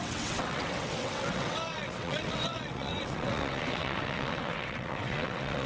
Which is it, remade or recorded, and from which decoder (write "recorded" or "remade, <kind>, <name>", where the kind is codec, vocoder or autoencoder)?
remade, vocoder, WaveNeXt